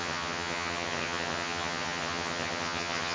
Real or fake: fake